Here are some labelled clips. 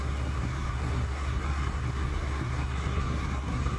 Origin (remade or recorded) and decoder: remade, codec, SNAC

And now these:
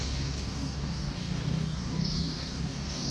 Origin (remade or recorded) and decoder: remade, codec, DAC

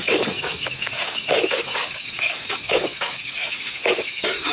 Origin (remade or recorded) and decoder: remade, codec, DAC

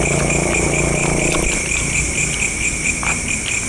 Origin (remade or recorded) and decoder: recorded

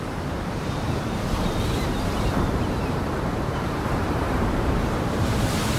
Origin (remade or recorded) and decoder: remade, vocoder, BigVGAN v2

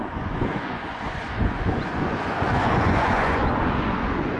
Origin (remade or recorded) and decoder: remade, vocoder, Vocos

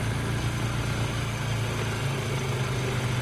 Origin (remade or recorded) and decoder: recorded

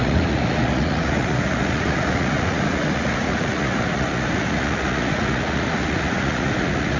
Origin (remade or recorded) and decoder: remade, vocoder, Vocos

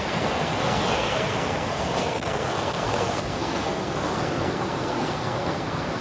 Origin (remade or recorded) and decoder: remade, codec, SNAC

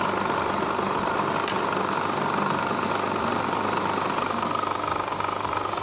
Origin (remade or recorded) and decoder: recorded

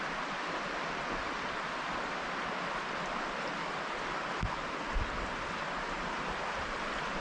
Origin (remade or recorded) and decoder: recorded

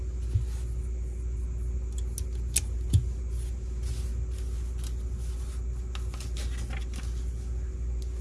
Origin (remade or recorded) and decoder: recorded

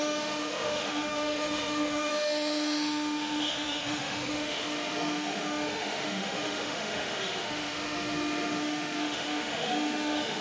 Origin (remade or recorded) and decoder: remade, autoencoder, DAC-VAE